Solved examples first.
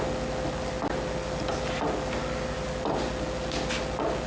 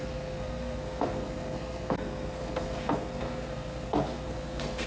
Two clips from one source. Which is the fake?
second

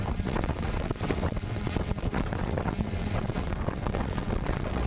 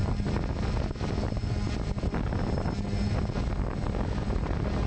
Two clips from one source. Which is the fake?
first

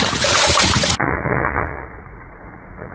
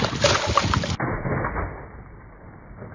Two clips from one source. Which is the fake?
first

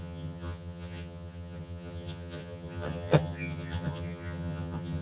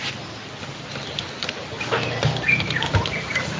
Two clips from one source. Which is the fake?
first